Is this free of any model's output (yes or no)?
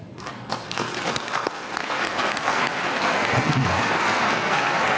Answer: no